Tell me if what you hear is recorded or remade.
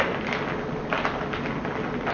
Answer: recorded